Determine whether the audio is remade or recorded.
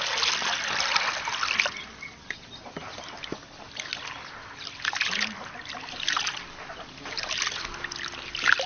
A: recorded